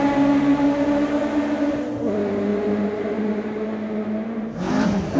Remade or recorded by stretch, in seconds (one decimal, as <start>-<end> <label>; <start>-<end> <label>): 0.0-5.2 recorded